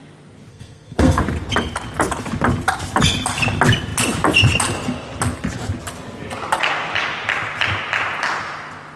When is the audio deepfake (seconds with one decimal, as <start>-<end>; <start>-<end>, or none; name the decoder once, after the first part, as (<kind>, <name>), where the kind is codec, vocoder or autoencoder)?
0.5-1.2 (codec, SNAC)